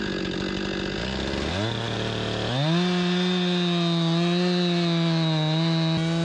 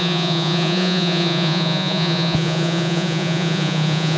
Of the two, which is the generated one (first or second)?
second